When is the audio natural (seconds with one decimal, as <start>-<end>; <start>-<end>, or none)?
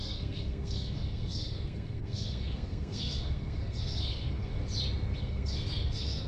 4.5-5.2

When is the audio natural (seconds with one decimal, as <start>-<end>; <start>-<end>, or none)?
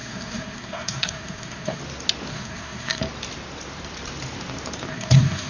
1.8-2.3; 3.0-4.9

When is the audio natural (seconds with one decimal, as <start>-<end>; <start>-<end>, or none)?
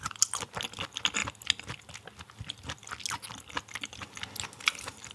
0.0-5.1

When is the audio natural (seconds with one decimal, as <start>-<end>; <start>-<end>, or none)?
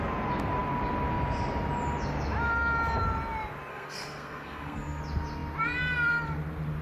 0.0-3.7; 5.0-6.8